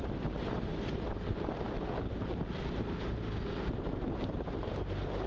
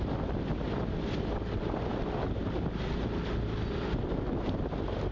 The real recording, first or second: second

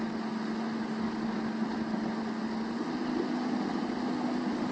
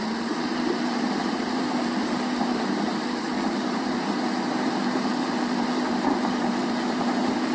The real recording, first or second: first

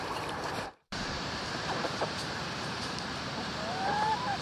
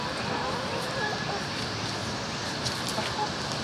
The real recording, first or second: second